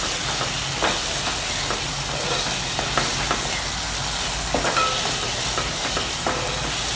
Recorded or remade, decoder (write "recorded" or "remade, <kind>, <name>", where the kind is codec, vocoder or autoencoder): recorded